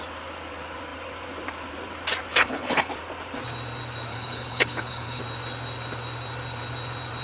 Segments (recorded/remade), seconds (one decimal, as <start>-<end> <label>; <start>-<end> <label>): 0.0-2.3 recorded; 2.3-2.9 remade; 2.9-4.1 recorded; 4.1-5.2 remade; 5.2-7.2 recorded